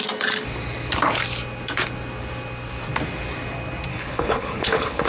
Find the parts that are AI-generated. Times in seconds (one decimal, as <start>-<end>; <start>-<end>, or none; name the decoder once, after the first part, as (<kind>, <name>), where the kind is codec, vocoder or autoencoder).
3.9-5.1 (codec, HILCodec)